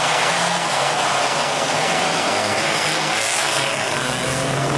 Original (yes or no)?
no